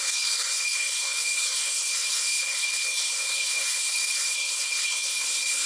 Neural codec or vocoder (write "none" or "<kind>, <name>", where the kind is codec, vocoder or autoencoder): codec, SNAC